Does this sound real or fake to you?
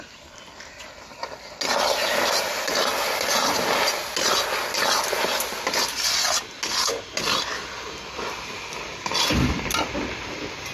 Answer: real